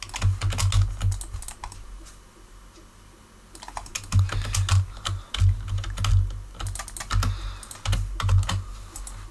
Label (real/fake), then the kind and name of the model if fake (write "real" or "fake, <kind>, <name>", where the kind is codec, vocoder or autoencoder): real